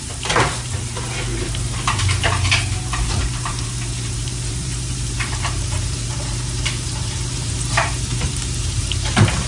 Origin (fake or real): fake